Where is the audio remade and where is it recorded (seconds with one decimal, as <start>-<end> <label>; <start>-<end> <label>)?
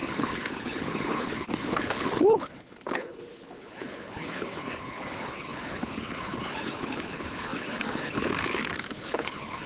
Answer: 0.0-9.7 remade